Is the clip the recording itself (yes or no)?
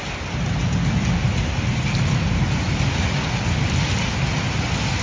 yes